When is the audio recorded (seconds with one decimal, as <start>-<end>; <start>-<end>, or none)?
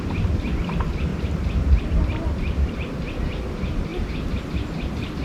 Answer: 0.0-1.1; 3.2-5.2